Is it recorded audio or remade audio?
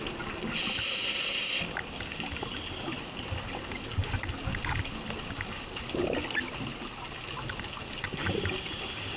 recorded